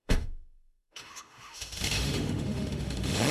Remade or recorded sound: remade